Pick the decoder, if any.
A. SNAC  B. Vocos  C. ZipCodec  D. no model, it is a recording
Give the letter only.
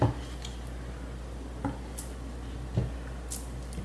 D